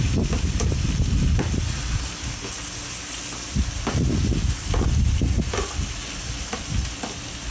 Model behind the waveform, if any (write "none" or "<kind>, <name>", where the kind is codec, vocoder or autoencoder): none